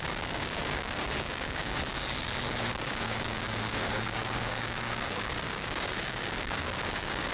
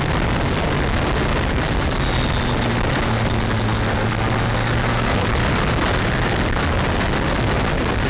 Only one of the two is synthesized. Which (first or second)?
first